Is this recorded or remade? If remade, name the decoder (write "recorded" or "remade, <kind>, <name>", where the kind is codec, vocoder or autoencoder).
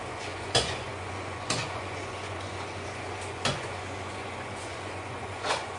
remade, vocoder, Vocos